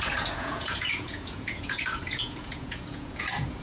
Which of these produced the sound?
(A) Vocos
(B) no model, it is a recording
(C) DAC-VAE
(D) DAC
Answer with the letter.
A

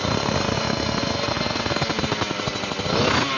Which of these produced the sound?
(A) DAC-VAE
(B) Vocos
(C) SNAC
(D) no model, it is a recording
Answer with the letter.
D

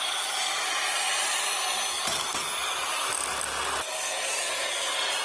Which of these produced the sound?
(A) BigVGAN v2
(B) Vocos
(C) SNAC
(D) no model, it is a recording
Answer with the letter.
D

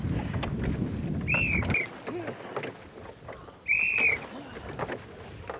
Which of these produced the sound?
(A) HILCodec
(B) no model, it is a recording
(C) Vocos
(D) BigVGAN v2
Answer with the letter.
B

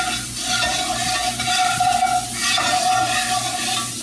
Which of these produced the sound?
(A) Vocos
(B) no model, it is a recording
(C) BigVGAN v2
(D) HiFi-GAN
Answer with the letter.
B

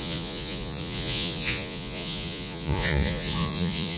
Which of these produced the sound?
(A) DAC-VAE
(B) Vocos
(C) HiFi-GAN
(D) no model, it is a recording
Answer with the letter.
B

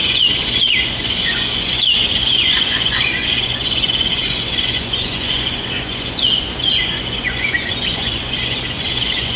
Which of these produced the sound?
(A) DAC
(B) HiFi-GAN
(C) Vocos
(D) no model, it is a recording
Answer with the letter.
C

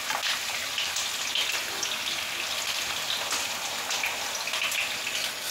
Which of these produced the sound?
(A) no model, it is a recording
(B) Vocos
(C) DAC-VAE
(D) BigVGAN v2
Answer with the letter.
A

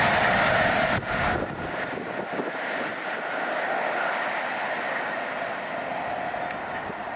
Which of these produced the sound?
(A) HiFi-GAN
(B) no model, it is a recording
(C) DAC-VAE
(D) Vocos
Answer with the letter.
B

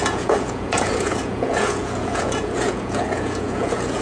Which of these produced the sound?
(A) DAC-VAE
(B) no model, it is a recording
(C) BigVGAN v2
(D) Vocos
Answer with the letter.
D